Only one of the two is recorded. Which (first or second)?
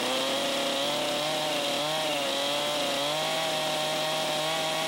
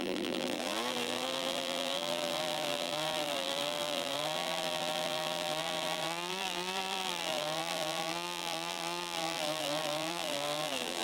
first